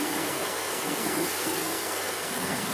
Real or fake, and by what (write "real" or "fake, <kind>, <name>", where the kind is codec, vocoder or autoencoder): fake, codec, SNAC